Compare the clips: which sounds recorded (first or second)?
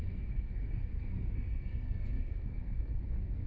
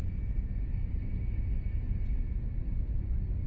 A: second